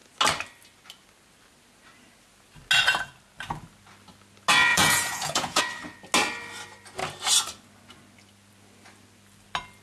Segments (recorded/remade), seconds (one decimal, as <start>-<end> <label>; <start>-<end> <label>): 0.0-4.7 recorded; 4.7-5.6 remade; 5.6-9.8 recorded